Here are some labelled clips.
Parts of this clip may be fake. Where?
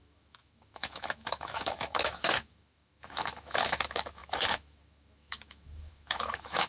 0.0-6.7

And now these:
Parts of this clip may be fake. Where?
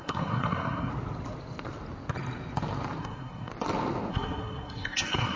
0.0-0.9; 3.0-3.5; 4.1-5.4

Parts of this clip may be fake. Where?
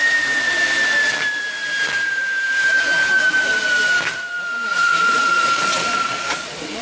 4.7-6.8